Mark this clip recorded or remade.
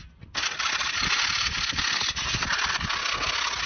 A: recorded